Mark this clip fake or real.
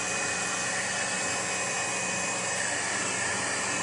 real